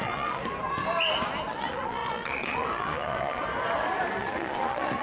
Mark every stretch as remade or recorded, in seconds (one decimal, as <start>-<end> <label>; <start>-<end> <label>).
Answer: 0.0-0.4 remade; 0.4-1.5 recorded; 1.5-3.4 remade; 3.4-4.2 recorded; 4.2-5.0 remade